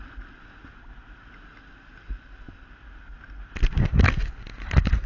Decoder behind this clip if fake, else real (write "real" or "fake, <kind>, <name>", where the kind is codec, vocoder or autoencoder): real